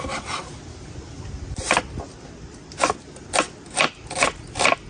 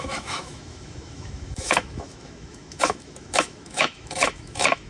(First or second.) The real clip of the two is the first